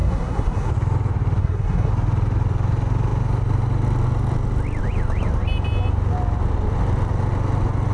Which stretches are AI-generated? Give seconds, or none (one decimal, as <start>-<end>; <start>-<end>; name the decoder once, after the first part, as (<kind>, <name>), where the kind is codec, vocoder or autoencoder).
0.0-0.7 (codec, SNAC); 1.4-1.9